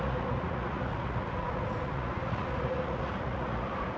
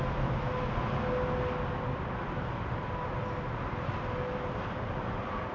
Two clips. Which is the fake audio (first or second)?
first